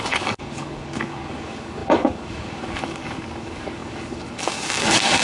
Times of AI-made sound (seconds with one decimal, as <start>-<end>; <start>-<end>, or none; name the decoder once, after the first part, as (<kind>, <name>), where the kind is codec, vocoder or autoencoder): 0.0-5.2 (codec, DAC)